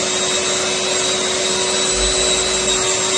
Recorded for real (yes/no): yes